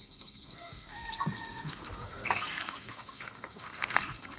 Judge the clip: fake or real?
fake